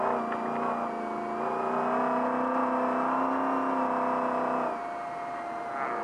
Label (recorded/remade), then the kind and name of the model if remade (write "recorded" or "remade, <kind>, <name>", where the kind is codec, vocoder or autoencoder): recorded